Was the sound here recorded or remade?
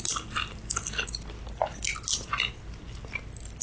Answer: recorded